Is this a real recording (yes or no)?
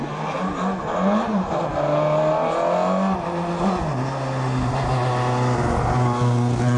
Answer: yes